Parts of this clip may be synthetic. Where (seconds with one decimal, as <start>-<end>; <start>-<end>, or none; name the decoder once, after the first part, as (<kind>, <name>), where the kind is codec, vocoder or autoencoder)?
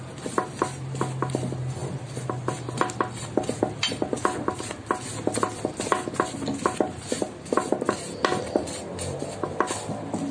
none